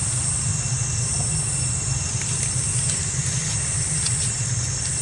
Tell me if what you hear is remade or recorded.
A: recorded